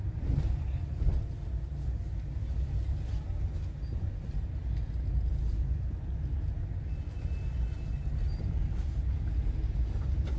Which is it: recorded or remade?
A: recorded